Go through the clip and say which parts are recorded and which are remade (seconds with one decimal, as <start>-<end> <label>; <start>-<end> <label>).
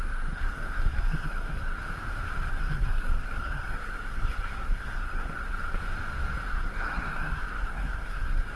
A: 0.0-1.8 remade; 1.8-2.5 recorded; 2.5-5.8 remade; 5.8-6.5 recorded; 6.5-8.6 remade